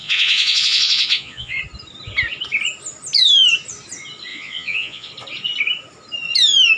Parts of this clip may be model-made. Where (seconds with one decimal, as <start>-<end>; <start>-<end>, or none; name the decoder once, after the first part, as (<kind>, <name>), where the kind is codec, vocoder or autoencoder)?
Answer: 0.0-1.6 (vocoder, Vocos); 4.3-5.1